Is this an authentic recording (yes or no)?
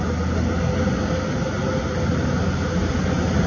yes